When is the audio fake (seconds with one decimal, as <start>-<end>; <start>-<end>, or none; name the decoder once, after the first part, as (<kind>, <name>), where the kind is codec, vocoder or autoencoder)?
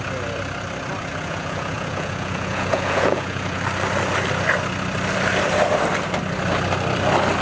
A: 1.1-3.6 (vocoder, Vocos)